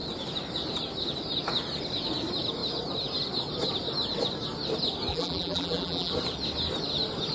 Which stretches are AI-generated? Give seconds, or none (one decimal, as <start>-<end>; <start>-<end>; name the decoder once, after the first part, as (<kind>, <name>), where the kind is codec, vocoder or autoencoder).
5.1-6.1 (vocoder, BigVGAN v2)